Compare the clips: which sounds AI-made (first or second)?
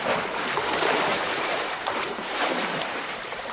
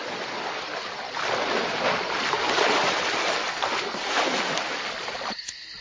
first